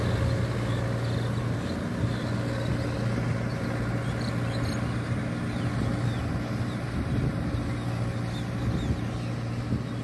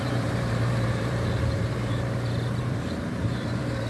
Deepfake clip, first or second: second